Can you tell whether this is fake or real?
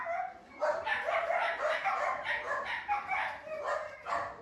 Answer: real